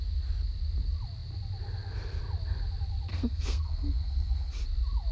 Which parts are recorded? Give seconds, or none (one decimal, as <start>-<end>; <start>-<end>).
0.0-3.1; 4.5-5.1